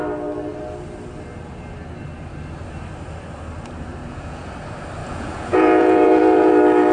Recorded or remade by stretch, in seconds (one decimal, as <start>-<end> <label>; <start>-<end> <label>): 0.0-4.0 recorded; 4.0-4.5 remade; 4.5-5.0 recorded; 5.0-6.5 remade; 6.5-6.9 recorded